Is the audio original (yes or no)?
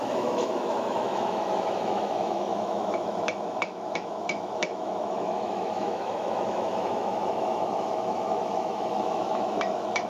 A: no